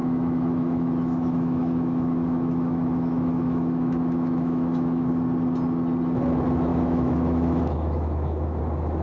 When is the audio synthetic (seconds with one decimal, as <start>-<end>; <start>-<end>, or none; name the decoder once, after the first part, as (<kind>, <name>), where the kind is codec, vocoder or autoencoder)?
0.0-5.1 (autoencoder, DAC-VAE); 6.7-8.6